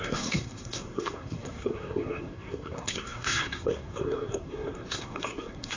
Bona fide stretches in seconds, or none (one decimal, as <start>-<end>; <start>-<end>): none